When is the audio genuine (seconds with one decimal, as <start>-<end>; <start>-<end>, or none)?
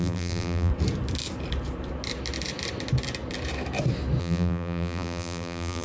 0.7-4.2